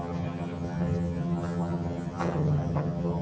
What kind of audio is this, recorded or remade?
remade